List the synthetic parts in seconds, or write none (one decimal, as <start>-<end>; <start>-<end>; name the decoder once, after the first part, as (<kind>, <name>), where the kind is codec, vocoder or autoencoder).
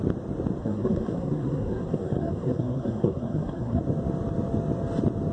0.6-3.8 (codec, SNAC)